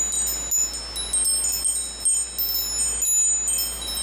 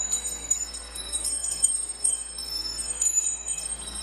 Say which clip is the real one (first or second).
first